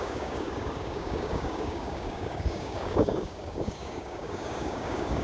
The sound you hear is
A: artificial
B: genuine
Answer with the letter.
A